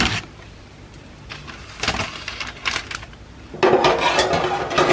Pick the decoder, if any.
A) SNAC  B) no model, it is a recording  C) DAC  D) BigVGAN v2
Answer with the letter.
B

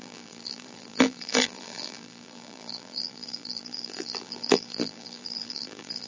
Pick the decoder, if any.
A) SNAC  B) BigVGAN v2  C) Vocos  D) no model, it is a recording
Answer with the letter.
B